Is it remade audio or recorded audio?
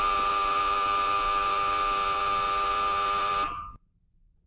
remade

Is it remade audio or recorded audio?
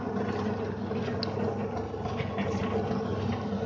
recorded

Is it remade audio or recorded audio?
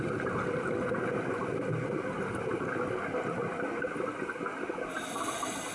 recorded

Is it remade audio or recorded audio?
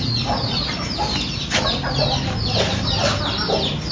recorded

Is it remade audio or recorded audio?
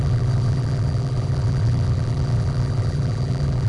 remade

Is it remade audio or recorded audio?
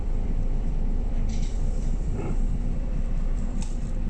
remade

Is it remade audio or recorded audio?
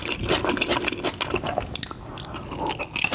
recorded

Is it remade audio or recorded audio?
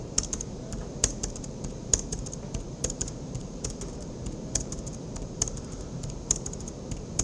remade